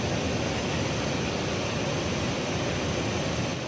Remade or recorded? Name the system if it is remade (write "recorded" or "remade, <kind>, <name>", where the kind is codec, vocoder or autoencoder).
recorded